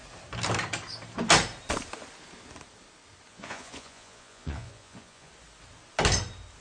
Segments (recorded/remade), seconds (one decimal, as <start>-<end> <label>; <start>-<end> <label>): 0.0-3.3 recorded; 3.3-5.3 remade; 5.3-6.6 recorded